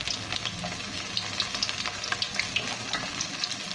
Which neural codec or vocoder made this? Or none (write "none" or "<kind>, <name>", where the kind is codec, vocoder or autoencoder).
none